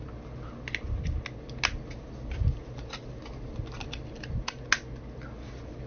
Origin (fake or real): real